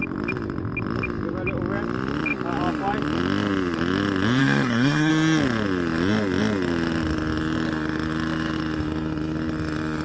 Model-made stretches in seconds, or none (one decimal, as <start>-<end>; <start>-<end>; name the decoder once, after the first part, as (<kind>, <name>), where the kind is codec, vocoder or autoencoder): 4.4-5.1 (codec, SNAC)